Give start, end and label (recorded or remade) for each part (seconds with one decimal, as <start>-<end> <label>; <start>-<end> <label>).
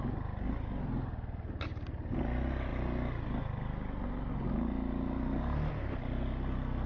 0.0-6.9 recorded